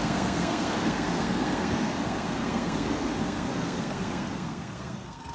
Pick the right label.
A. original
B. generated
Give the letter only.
B